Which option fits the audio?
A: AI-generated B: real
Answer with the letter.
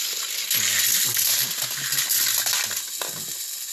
B